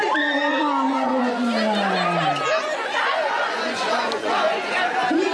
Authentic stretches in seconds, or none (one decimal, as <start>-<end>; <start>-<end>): 0.0-0.5; 1.2-2.8; 4.8-5.3